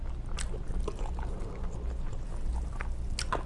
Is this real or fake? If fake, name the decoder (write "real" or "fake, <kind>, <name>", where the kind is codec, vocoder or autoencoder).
real